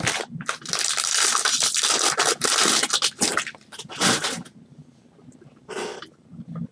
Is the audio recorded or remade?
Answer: recorded